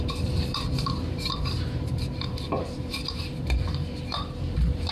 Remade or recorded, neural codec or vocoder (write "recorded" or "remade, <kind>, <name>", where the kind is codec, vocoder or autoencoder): remade, vocoder, BigVGAN v2